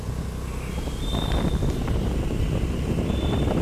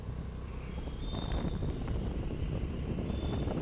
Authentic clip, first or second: first